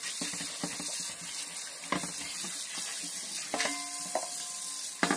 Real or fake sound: real